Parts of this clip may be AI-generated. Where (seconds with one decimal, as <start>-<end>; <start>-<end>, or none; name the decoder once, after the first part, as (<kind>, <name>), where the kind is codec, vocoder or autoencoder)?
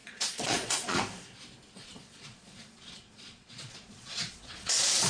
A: 0.0-1.0 (vocoder, Vocos); 1.8-5.1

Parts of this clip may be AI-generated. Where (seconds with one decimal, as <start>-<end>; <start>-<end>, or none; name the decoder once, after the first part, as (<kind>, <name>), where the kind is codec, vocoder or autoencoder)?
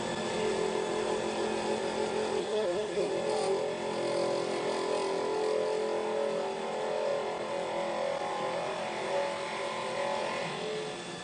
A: 2.4-3.1 (codec, SNAC)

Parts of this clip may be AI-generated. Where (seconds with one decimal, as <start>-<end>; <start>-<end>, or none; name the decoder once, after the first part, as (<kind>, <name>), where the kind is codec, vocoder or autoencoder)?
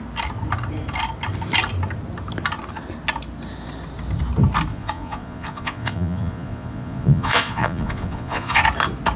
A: 4.7-8.6 (vocoder, Vocos)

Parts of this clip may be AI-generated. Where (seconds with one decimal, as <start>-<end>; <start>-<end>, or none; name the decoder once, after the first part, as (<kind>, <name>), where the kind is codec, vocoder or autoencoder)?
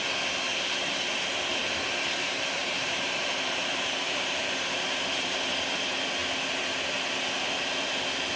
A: 1.6-5.8 (vocoder, BigVGAN v2)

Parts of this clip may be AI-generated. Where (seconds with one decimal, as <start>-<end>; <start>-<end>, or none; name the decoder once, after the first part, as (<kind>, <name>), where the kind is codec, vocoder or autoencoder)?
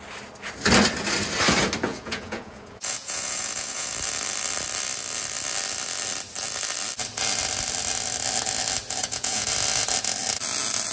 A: 1.9-3.9 (vocoder, Vocos); 9.0-9.5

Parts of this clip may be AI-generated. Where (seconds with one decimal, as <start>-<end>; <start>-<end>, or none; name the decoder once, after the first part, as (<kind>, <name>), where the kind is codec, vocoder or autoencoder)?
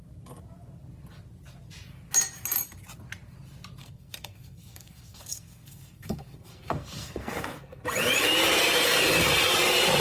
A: 3.8-7.8 (codec, SNAC)